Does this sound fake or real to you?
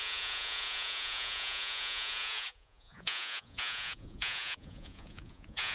fake